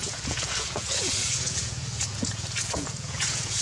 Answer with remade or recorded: remade